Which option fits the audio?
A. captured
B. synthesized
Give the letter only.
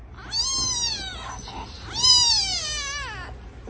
A